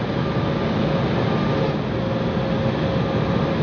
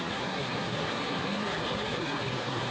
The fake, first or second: second